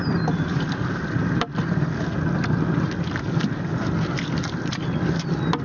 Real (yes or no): yes